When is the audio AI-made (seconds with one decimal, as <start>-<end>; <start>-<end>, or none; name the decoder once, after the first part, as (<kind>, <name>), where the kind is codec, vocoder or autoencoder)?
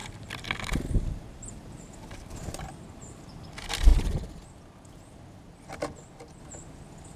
0.0-3.5 (vocoder, BigVGAN v2)